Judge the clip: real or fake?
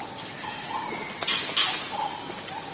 real